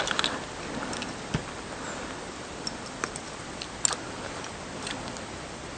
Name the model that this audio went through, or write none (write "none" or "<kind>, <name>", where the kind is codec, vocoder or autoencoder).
none